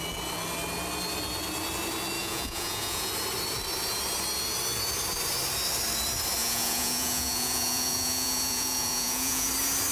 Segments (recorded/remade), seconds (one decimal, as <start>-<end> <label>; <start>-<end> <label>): 0.0-2.2 recorded; 2.2-3.1 remade; 3.1-6.4 recorded; 6.4-9.5 remade; 9.5-9.9 recorded